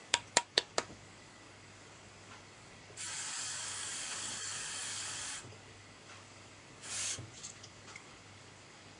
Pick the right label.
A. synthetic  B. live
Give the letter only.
A